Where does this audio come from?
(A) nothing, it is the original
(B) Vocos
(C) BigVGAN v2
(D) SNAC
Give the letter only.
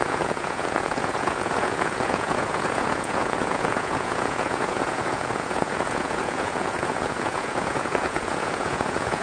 B